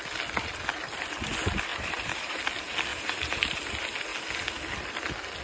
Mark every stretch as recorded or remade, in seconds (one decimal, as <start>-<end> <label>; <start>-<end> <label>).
0.0-1.7 recorded; 1.7-2.4 remade; 2.4-2.9 recorded; 2.9-3.5 remade; 3.5-5.4 recorded